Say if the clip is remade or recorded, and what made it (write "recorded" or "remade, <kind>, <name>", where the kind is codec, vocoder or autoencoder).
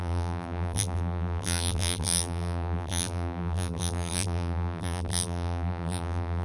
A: remade, vocoder, BigVGAN v2